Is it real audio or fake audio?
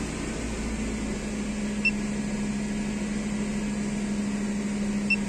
real